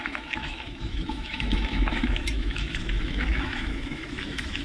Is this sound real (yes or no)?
no